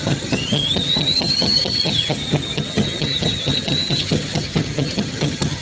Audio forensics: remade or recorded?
remade